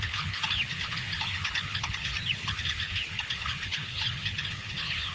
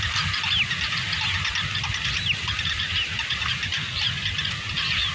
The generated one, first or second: first